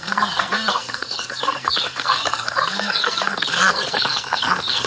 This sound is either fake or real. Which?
fake